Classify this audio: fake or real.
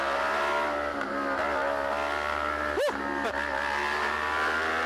real